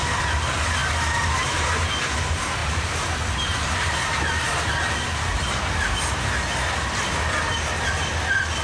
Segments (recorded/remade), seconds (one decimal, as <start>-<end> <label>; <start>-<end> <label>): 0.0-2.6 recorded; 2.6-3.7 remade; 3.7-8.6 recorded